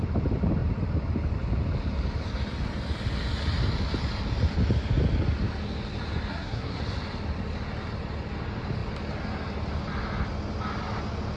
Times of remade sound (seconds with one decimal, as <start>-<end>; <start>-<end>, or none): 6.3-6.8